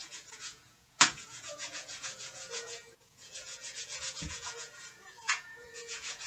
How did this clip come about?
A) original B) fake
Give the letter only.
B